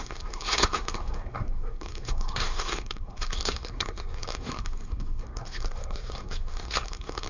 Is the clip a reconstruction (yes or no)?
yes